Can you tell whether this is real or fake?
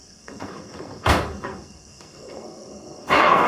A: fake